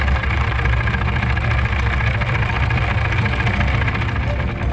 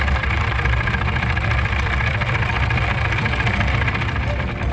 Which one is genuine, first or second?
first